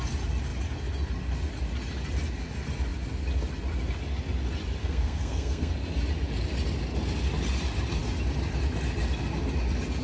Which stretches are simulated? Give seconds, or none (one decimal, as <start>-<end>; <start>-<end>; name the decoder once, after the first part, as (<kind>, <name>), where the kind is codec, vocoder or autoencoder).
4.8-5.7 (codec, SNAC)